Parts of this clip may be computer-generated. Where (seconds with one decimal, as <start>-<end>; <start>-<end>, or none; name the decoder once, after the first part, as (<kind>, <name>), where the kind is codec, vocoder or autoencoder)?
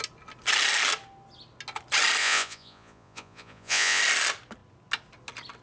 2.2-4.0 (vocoder, Vocos)